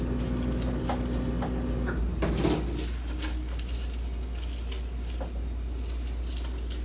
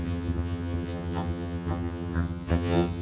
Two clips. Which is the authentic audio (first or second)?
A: first